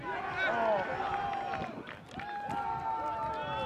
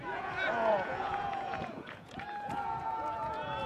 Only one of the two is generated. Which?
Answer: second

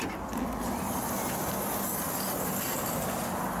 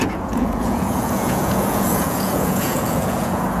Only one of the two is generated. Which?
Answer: second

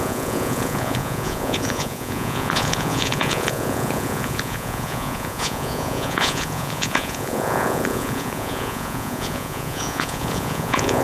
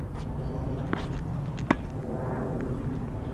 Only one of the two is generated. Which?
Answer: first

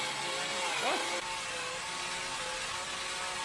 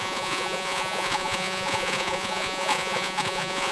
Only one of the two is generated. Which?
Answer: second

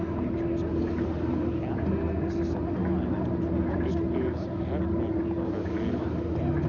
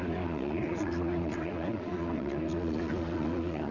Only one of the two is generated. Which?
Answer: second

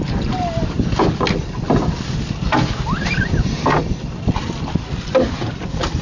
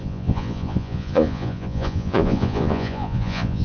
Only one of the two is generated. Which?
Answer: second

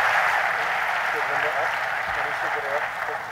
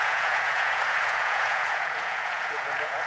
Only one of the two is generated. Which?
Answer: second